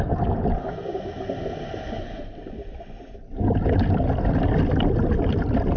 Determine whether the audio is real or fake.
real